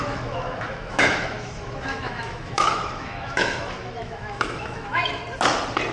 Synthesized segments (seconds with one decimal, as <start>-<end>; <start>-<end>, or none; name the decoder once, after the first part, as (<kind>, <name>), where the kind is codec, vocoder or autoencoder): 0.0-5.2 (autoencoder, DAC-VAE)